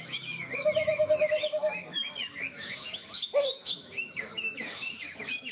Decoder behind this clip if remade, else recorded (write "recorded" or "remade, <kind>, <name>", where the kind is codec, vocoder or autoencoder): remade, autoencoder, DAC-VAE